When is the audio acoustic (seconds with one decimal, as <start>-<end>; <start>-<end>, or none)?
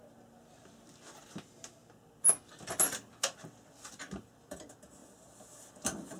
0.0-6.2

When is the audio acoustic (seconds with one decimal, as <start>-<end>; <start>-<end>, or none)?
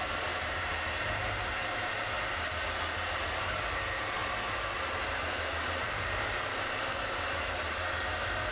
none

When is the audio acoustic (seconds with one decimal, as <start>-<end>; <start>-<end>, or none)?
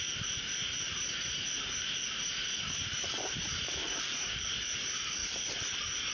0.0-2.3; 4.4-6.1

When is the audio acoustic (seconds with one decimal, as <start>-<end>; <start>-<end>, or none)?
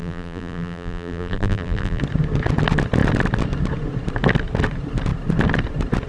2.0-6.1